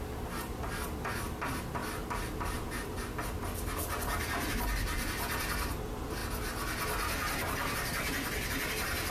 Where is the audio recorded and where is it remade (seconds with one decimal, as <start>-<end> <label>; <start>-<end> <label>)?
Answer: 0.0-9.1 recorded